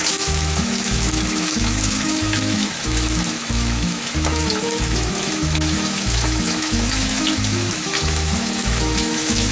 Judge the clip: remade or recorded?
remade